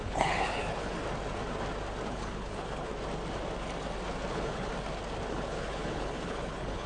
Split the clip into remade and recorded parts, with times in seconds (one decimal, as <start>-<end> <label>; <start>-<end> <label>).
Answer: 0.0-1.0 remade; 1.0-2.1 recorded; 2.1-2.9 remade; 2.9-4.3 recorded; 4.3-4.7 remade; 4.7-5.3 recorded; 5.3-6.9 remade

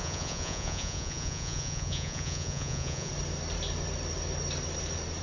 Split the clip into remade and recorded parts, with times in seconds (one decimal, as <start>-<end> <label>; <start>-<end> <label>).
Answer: 0.0-3.1 remade; 3.1-5.2 recorded

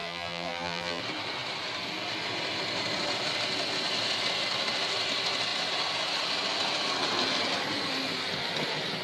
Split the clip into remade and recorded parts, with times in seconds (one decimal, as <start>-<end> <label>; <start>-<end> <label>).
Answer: 0.0-1.0 remade; 1.0-9.0 recorded

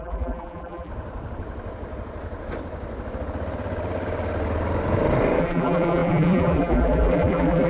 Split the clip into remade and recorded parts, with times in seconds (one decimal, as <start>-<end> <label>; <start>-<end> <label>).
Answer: 0.0-0.9 remade; 0.9-5.4 recorded; 5.4-7.7 remade

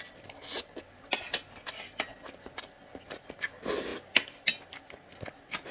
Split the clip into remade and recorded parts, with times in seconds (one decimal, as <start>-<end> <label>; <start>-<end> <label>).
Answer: 0.0-2.1 recorded; 2.1-2.6 remade; 2.6-3.9 recorded; 3.9-5.7 remade

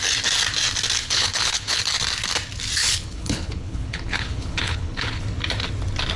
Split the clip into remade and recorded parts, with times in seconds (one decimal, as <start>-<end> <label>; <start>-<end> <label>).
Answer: 0.0-1.0 recorded; 1.0-1.8 remade; 1.8-2.8 recorded; 2.8-5.2 remade; 5.2-6.2 recorded

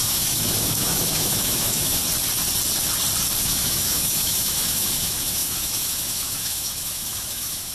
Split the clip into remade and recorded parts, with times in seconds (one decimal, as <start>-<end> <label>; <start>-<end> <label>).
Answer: 0.0-2.0 remade; 2.0-3.4 recorded; 3.4-7.7 remade

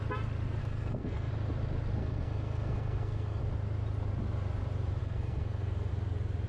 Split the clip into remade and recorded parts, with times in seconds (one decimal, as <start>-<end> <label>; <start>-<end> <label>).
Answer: 0.0-0.6 recorded; 0.6-1.3 remade; 1.3-2.0 recorded; 2.0-3.4 remade; 3.4-5.0 recorded; 5.0-5.9 remade; 5.9-6.5 recorded